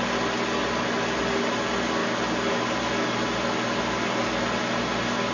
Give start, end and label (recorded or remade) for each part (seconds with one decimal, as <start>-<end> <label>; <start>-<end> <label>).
0.0-5.3 recorded